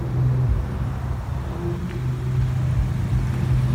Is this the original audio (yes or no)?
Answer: yes